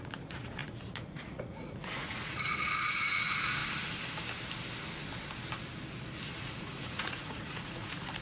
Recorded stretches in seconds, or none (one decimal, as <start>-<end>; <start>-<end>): 3.6-6.4